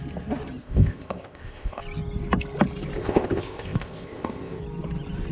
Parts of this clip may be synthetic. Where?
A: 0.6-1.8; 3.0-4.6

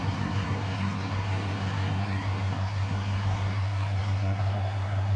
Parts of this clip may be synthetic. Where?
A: 0.0-5.2